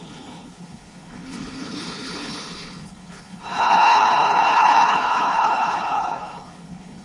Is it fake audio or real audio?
fake